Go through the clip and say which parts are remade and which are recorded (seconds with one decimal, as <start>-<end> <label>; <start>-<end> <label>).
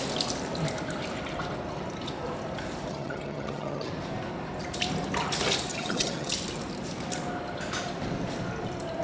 0.0-2.9 recorded; 2.9-3.9 remade; 3.9-5.7 recorded; 5.7-6.3 remade; 6.3-9.0 recorded